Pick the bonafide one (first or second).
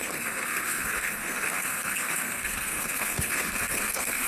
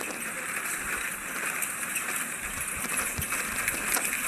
second